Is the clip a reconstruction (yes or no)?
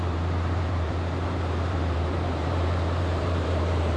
yes